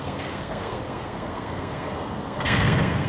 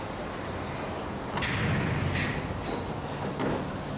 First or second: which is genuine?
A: second